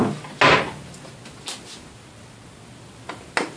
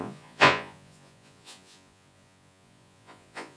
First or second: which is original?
first